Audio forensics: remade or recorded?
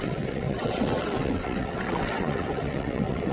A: remade